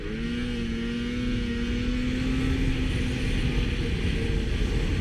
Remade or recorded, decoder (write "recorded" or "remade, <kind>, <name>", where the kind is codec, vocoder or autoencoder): recorded